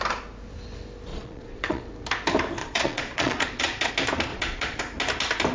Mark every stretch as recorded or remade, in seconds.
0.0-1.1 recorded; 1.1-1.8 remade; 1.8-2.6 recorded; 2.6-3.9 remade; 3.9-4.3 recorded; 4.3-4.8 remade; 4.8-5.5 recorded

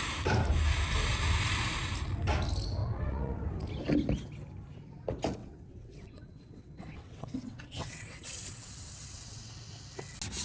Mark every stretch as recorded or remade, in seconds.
0.0-2.8 recorded; 2.8-3.4 remade; 3.4-5.4 recorded; 5.4-9.5 remade; 9.5-10.4 recorded

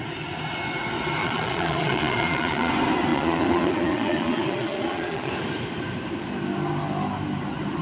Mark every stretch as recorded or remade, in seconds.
0.0-1.2 recorded; 1.2-2.7 remade; 2.7-3.1 recorded; 3.1-5.3 remade; 5.3-7.8 recorded

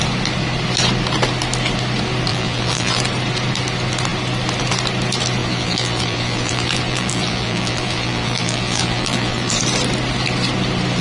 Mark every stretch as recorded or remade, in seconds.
0.0-2.3 recorded; 2.3-3.0 remade; 3.0-5.4 recorded; 5.4-9.6 remade; 9.6-11.0 recorded

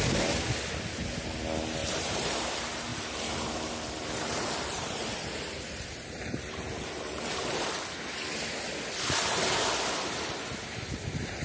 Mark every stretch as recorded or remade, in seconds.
0.0-1.8 recorded; 1.8-2.5 remade; 2.5-2.9 recorded; 2.9-7.8 remade; 7.8-11.4 recorded

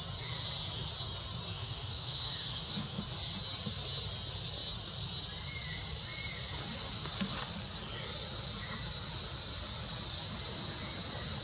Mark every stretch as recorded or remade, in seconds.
0.0-1.5 recorded; 1.5-3.0 remade; 3.0-11.4 recorded